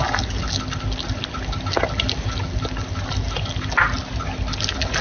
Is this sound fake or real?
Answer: real